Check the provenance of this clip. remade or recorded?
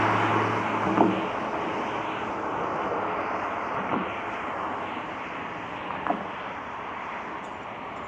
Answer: recorded